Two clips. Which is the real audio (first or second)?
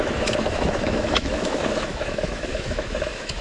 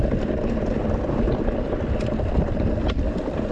second